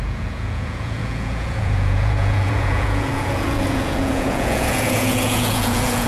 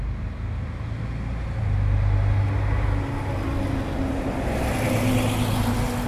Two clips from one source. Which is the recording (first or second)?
second